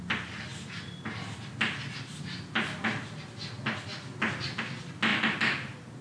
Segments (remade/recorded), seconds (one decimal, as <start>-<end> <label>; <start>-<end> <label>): 0.0-6.0 recorded